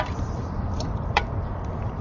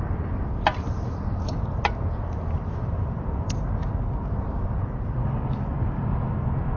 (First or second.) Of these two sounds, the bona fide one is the second